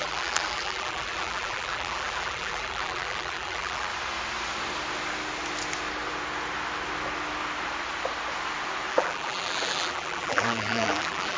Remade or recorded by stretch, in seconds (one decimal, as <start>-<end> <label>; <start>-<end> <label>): 0.0-3.9 remade; 3.9-8.9 recorded; 8.9-11.4 remade